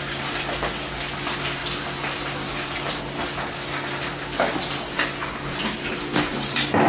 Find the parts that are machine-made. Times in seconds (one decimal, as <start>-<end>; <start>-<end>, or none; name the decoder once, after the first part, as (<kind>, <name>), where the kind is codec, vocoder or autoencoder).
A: none